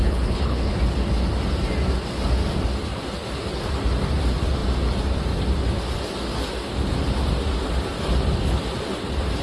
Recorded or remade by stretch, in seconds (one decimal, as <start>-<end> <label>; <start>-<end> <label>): 0.0-0.8 remade; 0.8-9.4 recorded

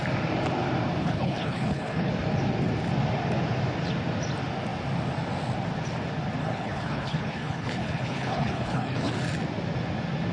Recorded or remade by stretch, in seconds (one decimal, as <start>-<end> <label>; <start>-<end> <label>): 0.0-1.0 recorded; 1.0-2.1 remade; 2.1-6.4 recorded; 6.4-9.1 remade; 9.1-10.3 recorded

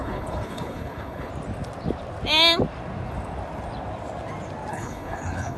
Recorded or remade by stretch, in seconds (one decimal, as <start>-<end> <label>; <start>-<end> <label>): 0.0-1.3 remade; 1.3-4.7 recorded; 4.7-5.6 remade

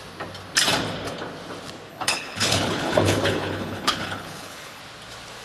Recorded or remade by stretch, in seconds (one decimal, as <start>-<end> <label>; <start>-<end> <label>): 0.0-1.9 recorded; 1.9-4.8 remade; 4.8-5.4 recorded

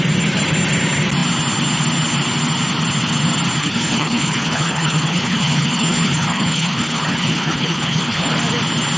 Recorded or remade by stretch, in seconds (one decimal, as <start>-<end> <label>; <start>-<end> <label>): 0.0-3.6 recorded; 3.6-8.4 remade; 8.4-9.0 recorded